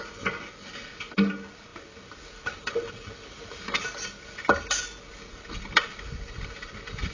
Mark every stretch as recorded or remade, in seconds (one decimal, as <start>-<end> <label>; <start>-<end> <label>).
0.0-7.1 recorded